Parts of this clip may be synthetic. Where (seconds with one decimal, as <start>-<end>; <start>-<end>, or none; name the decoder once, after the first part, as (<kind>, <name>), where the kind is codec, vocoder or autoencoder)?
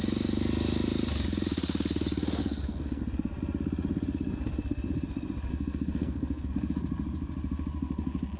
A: 2.4-3.0 (codec, SNAC); 5.5-6.5